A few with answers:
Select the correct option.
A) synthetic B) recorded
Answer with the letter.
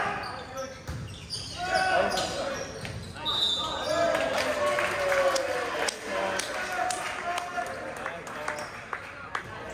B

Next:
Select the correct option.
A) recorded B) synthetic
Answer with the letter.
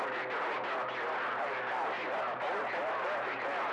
A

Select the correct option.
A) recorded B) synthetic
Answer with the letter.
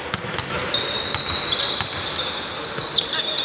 A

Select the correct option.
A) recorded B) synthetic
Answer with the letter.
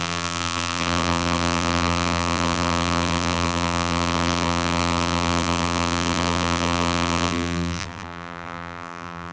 B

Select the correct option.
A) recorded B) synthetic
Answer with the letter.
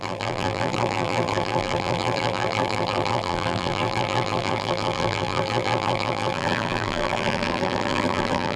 B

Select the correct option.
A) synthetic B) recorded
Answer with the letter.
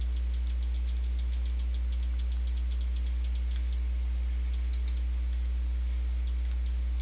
B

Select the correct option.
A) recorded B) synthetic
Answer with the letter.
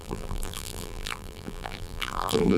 B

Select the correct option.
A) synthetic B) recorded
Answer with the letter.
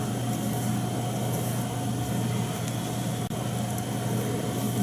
B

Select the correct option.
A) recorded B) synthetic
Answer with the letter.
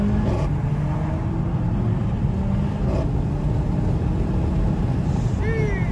A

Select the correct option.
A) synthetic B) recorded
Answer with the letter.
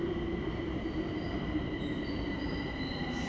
A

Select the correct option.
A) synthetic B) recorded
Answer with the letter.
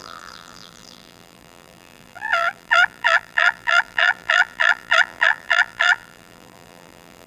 A